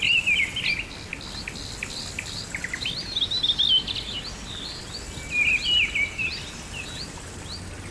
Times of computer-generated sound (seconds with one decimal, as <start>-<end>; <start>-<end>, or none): none